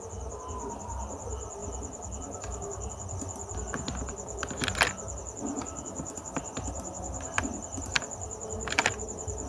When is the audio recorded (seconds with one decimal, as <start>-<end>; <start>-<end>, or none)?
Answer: 0.0-9.5